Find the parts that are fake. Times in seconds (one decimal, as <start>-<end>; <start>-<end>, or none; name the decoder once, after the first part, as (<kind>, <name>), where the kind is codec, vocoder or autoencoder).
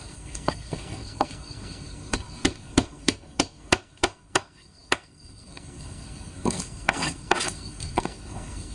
0.0-8.7 (codec, SNAC)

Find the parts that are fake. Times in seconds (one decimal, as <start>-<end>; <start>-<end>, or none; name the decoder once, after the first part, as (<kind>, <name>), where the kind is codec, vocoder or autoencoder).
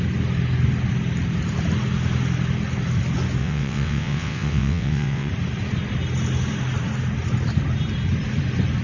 3.4-5.3 (vocoder, WaveNeXt)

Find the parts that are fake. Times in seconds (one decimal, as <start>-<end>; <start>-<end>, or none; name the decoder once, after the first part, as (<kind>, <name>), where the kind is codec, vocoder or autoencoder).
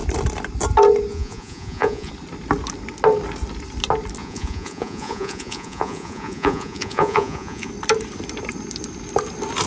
1.1-2.1 (vocoder, Vocos); 4.2-7.7